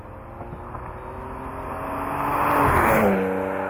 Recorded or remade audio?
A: recorded